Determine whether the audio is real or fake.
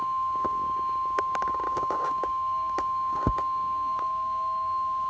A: fake